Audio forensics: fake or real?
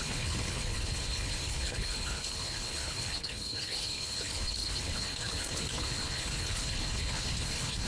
fake